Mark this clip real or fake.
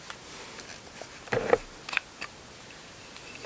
real